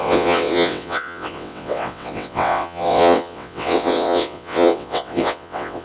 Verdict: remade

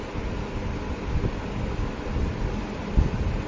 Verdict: recorded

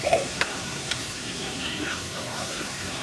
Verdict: remade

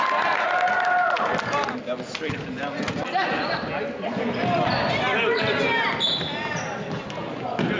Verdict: recorded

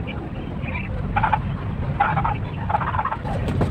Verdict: recorded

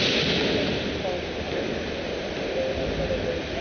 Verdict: recorded